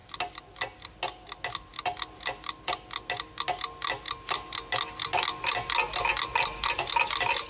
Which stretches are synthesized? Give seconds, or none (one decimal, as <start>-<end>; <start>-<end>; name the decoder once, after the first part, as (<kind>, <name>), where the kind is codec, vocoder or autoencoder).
none